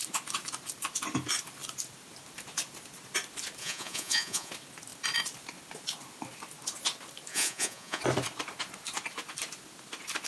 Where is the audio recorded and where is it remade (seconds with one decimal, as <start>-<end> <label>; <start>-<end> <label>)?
0.0-3.6 recorded; 3.6-4.5 remade; 4.5-7.3 recorded; 7.3-8.0 remade; 8.0-10.3 recorded